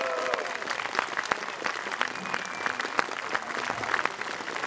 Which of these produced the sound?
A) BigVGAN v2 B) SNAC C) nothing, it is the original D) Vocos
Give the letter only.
C